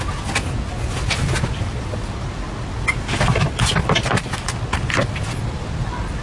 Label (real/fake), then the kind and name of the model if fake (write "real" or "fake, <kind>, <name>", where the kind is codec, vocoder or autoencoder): real